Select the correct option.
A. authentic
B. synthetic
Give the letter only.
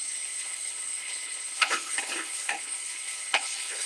B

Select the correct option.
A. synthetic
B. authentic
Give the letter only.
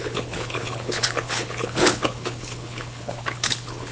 A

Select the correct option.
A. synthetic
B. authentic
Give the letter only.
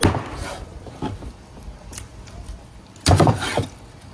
B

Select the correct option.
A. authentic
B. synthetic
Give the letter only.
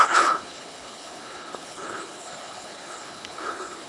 B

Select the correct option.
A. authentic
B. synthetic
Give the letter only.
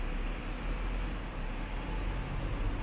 A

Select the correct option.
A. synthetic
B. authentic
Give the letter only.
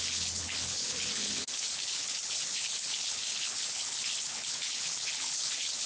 A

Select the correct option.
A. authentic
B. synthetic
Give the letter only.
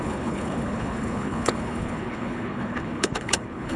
B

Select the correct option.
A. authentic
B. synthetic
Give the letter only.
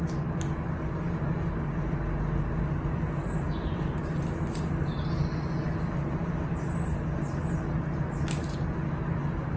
A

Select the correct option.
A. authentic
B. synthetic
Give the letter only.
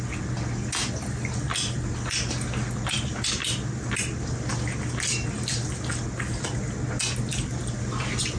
A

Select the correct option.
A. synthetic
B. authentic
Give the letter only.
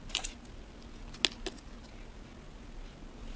B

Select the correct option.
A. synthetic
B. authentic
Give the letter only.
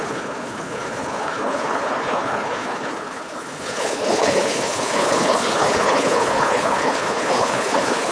A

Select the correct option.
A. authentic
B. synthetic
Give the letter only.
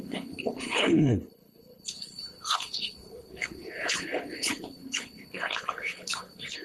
B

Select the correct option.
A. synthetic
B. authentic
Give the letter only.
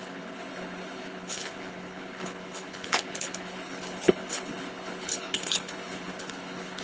A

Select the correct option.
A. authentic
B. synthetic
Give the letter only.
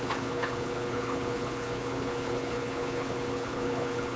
B